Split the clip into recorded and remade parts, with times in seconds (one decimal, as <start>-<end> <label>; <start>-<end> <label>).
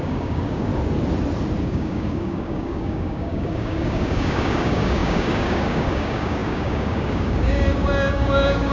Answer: 0.0-0.7 remade; 0.7-1.6 recorded; 1.6-8.7 remade